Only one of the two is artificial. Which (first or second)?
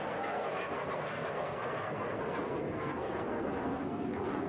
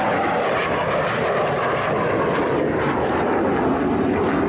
first